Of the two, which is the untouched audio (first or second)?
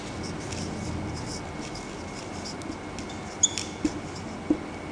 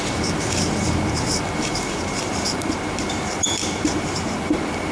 first